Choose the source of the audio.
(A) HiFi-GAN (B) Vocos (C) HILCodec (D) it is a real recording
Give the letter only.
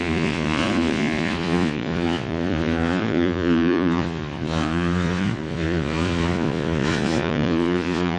B